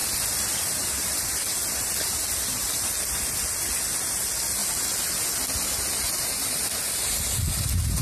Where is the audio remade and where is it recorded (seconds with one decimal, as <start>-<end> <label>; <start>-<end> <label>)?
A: 0.0-2.9 remade; 2.9-8.0 recorded

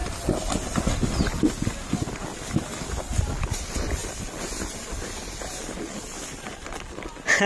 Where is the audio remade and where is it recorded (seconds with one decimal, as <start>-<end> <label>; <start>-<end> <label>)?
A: 0.0-7.5 recorded